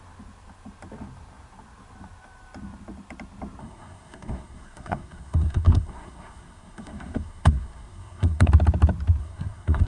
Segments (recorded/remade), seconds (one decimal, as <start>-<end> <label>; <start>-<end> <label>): 0.0-3.6 recorded; 3.6-8.5 remade; 8.5-9.2 recorded; 9.2-9.9 remade